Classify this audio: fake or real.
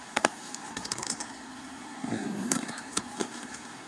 fake